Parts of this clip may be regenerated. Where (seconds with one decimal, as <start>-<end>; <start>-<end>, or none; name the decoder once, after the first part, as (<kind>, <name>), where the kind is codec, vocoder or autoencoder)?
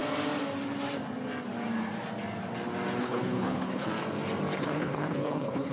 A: 3.0-3.9 (codec, HILCodec); 4.6-5.7